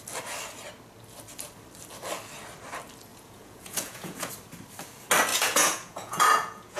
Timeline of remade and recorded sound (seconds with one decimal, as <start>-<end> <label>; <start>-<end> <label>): 0.0-3.1 recorded; 3.1-4.3 remade; 4.3-5.3 recorded; 5.3-6.8 remade